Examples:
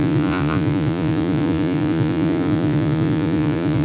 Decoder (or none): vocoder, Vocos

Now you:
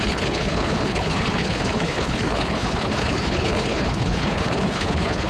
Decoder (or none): codec, HILCodec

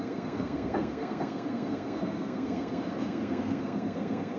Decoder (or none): codec, SNAC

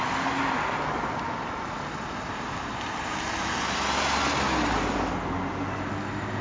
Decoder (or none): none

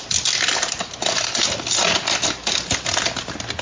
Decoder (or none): none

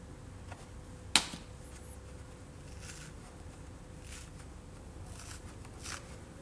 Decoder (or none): none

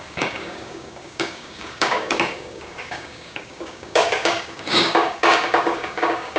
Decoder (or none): codec, DAC